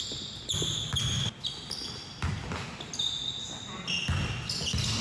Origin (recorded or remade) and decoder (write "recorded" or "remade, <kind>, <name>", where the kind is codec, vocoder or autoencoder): recorded